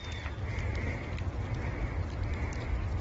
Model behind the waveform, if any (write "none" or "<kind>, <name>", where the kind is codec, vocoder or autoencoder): none